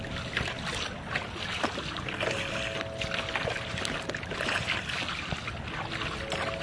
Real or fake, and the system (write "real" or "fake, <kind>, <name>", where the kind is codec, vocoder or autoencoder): real